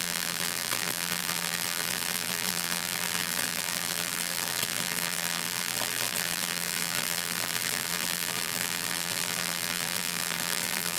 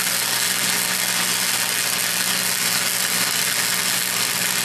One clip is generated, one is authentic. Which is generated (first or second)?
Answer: first